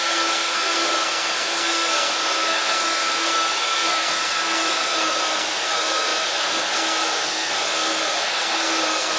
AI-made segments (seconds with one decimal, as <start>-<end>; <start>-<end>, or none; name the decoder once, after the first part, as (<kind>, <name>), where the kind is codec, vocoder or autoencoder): 0.0-9.2 (codec, SNAC)